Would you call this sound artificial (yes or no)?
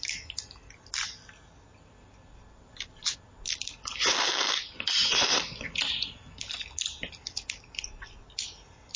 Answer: no